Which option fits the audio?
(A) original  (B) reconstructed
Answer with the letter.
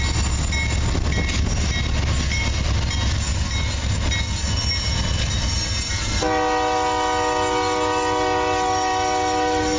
A